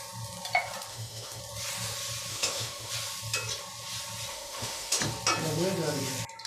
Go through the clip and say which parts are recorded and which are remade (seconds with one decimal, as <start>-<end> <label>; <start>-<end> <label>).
0.0-0.9 recorded; 0.9-1.4 remade; 1.4-2.3 recorded; 2.3-2.9 remade; 2.9-4.3 recorded; 4.3-5.0 remade; 5.0-6.5 recorded

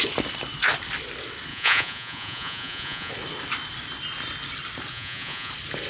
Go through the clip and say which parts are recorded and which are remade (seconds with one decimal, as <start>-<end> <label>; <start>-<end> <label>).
0.0-1.5 recorded; 1.5-3.1 remade; 3.1-4.9 recorded; 4.9-5.5 remade; 5.5-5.9 recorded